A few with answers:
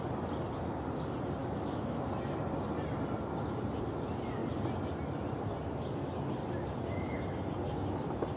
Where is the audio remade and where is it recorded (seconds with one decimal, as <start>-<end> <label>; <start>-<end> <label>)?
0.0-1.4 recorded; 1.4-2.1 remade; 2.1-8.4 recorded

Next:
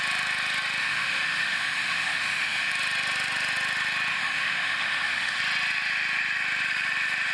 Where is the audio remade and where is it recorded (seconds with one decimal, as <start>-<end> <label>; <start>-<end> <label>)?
0.0-0.8 recorded; 0.8-2.7 remade; 2.7-4.1 recorded; 4.1-5.4 remade; 5.4-7.3 recorded

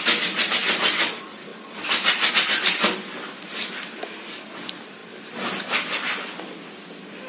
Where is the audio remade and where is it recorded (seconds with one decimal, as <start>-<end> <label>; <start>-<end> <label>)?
0.0-7.3 recorded

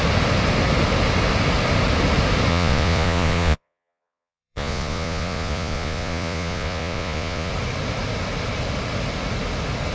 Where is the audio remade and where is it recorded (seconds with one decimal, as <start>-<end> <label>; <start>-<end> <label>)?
0.0-2.5 recorded; 2.5-7.5 remade; 7.5-9.9 recorded